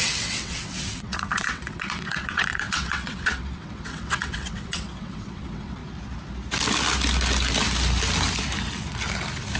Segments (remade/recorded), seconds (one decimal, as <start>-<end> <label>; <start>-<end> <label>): 0.0-5.8 remade; 5.8-9.6 recorded